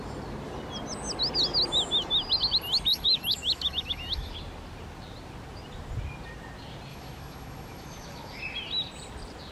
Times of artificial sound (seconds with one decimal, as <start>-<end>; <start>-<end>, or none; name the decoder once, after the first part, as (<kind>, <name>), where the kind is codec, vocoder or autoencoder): 2.9-4.3 (autoencoder, DAC-VAE); 6.9-8.4